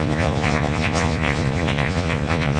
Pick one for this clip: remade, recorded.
remade